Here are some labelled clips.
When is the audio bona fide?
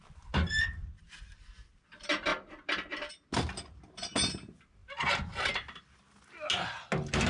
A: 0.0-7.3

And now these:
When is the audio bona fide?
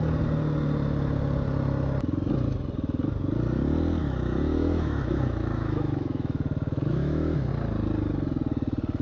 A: 0.0-4.0; 7.5-9.0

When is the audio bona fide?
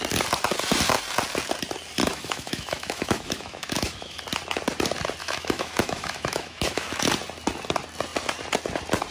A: 0.0-2.0; 4.2-5.2; 7.0-9.1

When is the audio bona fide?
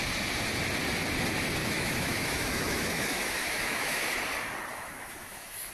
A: 0.0-1.6; 4.2-4.7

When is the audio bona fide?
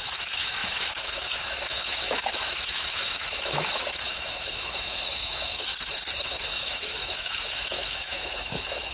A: 5.7-6.2